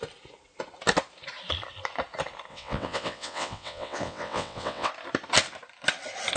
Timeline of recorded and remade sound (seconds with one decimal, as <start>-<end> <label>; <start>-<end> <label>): 0.0-2.5 recorded; 2.5-4.9 remade; 4.9-6.4 recorded